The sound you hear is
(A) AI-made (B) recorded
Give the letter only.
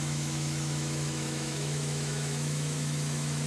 A